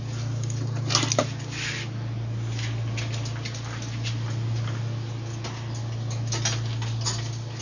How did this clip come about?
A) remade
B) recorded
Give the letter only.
B